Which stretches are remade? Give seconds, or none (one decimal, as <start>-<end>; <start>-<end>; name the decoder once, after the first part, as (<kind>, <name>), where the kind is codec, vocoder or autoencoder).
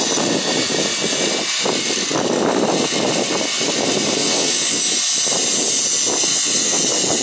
4.2-4.8 (vocoder, WaveNeXt); 6.3-6.8